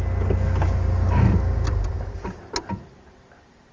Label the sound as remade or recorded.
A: recorded